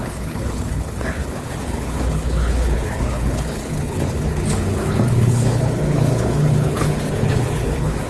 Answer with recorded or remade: remade